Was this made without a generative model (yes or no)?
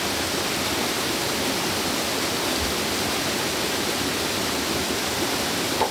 yes